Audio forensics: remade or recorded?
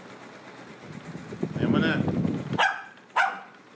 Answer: recorded